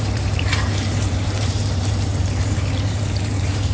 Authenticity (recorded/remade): remade